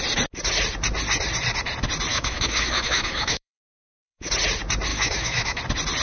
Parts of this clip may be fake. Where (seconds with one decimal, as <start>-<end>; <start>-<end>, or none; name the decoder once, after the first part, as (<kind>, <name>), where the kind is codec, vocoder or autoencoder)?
2.1-4.3 (autoencoder, DAC-VAE); 4.9-5.6